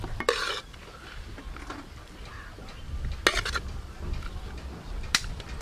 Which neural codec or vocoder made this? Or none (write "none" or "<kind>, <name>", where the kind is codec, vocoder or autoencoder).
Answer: none